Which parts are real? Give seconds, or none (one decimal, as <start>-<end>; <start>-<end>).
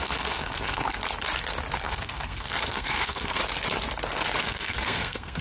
1.0-1.8; 3.4-4.4